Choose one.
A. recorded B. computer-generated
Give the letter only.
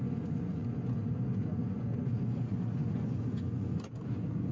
B